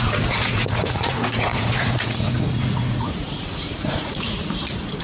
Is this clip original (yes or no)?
no